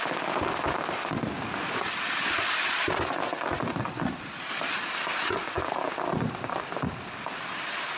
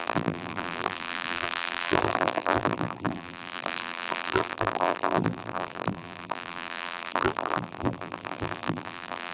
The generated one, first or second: second